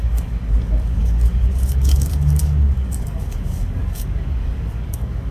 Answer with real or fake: fake